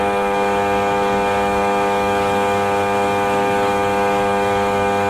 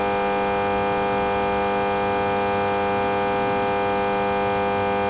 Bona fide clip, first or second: second